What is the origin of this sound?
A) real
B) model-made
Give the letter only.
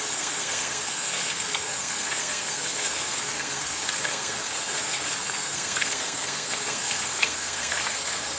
B